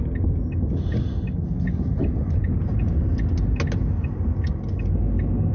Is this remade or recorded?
recorded